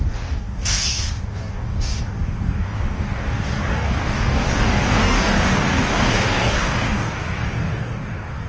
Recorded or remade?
remade